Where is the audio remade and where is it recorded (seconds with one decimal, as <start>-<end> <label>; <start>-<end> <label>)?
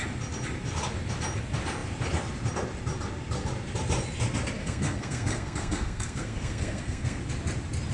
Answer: 0.0-4.6 recorded; 4.6-7.2 remade; 7.2-7.9 recorded